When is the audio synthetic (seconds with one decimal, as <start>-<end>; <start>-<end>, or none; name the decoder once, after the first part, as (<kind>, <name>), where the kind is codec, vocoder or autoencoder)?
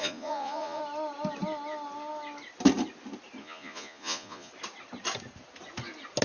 0.0-0.8 (vocoder, Vocos); 3.4-4.5